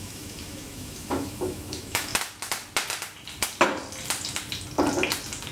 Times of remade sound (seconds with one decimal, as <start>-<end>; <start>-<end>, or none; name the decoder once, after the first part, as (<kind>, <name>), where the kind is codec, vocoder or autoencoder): 0.0-2.1 (autoencoder, DAC-VAE)